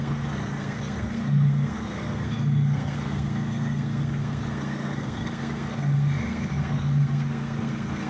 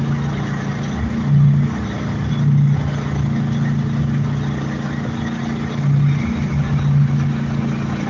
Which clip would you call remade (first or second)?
first